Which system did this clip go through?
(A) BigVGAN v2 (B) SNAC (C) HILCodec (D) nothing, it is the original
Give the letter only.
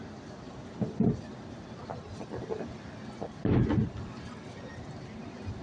D